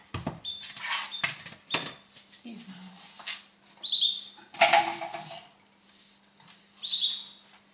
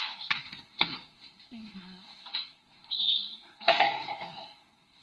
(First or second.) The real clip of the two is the first